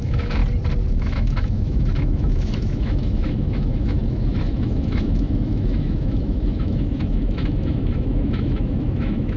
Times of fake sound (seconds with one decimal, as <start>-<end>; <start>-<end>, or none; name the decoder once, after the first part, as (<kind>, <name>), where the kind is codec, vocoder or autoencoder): 0.0-0.4 (autoencoder, DAC-VAE); 0.9-9.4